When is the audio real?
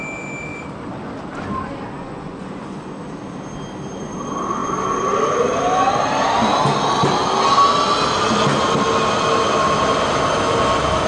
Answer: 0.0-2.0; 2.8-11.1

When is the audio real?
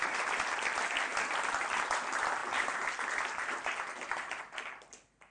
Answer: 0.0-5.3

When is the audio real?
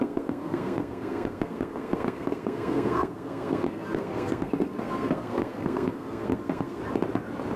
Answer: 6.8-7.6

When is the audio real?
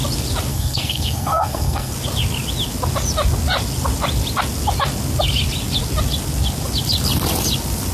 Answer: 0.0-0.5; 1.9-7.9